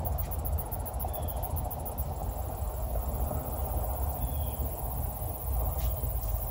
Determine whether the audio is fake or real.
real